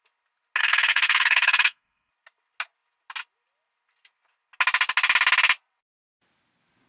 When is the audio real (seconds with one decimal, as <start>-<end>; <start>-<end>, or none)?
0.0-0.6; 2.1-6.9